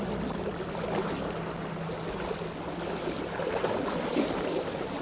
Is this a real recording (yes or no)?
yes